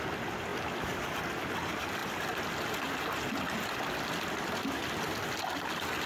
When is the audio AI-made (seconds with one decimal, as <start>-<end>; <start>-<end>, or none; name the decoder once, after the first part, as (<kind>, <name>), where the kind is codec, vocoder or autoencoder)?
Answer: none